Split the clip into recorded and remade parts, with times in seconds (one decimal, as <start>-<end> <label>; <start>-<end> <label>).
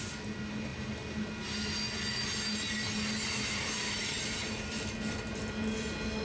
0.0-6.2 recorded